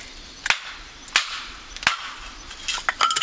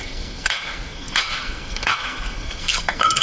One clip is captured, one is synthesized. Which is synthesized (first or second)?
second